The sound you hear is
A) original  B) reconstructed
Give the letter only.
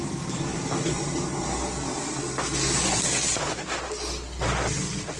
A